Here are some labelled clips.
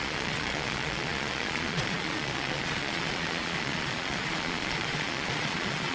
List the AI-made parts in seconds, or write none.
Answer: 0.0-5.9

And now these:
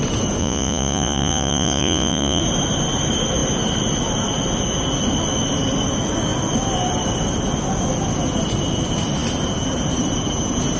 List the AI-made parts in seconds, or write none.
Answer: 0.4-2.4